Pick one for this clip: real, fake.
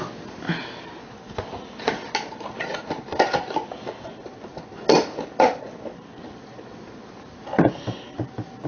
real